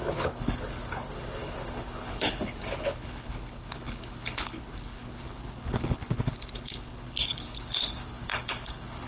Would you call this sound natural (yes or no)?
no